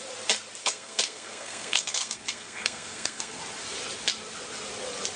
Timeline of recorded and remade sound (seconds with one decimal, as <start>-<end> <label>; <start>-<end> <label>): 0.0-0.6 recorded; 0.6-3.4 remade; 3.4-5.2 recorded